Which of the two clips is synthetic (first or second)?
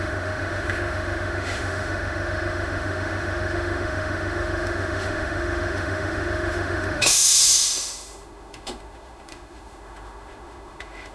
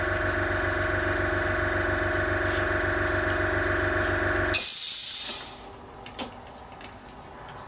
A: first